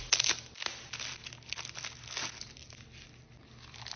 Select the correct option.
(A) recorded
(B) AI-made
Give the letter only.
A